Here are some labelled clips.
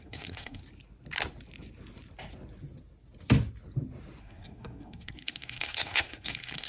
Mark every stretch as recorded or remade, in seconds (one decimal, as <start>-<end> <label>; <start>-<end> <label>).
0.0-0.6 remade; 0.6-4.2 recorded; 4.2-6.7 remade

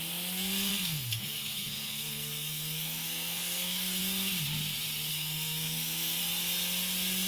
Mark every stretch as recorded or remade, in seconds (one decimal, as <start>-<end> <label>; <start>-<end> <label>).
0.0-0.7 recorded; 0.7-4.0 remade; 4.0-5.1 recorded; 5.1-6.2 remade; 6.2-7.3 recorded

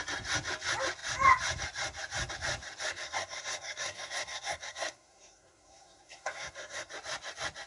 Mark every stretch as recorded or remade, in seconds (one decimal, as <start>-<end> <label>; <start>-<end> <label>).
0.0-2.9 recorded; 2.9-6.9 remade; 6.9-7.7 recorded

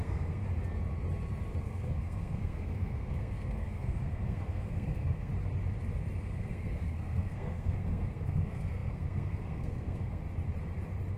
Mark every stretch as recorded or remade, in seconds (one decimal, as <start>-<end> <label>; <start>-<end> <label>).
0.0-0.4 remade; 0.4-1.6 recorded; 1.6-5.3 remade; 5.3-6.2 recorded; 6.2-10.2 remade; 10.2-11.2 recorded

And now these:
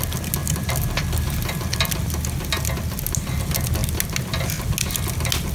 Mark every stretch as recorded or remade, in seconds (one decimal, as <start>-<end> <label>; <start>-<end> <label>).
0.0-5.5 recorded

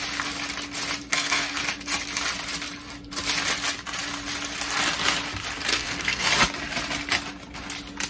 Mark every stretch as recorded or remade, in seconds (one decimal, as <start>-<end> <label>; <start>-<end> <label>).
0.0-1.1 recorded; 1.1-1.6 remade; 1.6-5.7 recorded; 5.7-6.3 remade; 6.3-8.1 recorded

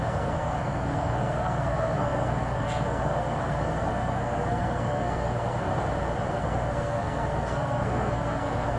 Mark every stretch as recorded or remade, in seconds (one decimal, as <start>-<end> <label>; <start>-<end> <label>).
0.0-5.7 remade; 5.7-6.3 recorded; 6.3-8.8 remade

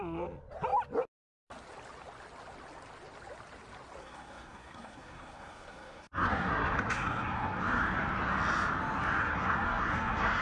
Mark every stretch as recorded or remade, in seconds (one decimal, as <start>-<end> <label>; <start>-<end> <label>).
0.0-4.0 recorded; 4.0-7.8 remade; 7.8-9.2 recorded; 9.2-10.4 remade